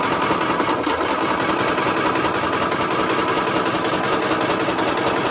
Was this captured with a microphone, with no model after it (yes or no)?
yes